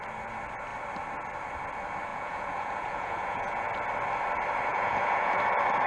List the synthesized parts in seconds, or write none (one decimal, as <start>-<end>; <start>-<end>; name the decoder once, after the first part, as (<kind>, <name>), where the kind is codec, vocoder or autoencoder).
2.1-3.7 (vocoder, Vocos); 4.7-5.4